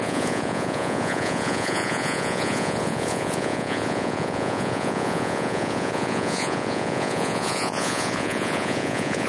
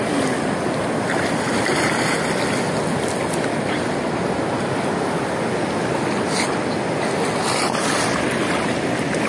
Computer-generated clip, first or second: first